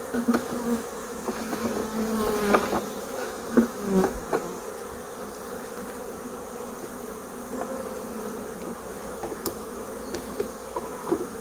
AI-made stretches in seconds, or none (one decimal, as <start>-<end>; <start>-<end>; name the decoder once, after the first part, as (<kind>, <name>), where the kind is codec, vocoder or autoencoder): 0.0-1.8 (autoencoder, DAC-VAE); 3.0-4.2; 8.9-11.4